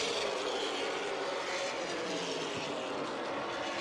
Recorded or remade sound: recorded